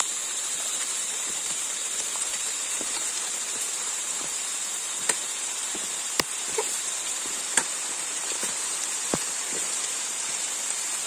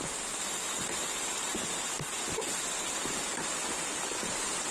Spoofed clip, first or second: first